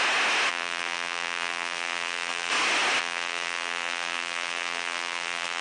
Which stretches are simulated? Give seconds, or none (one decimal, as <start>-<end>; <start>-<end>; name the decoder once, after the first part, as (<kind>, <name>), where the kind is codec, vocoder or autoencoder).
0.5-2.5 (vocoder, BigVGAN v2); 3.0-5.6